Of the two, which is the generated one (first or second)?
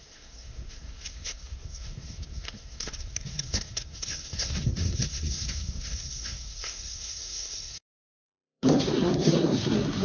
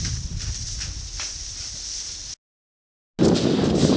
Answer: first